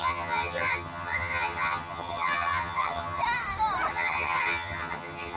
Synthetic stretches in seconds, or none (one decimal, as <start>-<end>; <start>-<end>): 0.0-3.2; 3.9-5.4